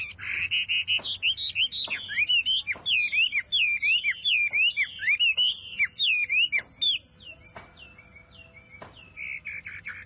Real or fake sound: real